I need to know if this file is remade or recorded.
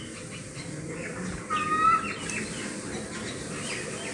recorded